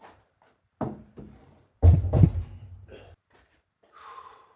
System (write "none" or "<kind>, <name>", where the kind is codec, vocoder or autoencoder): vocoder, BigVGAN v2